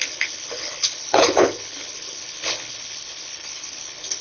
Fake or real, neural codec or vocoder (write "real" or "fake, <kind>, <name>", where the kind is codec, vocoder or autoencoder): fake, codec, HILCodec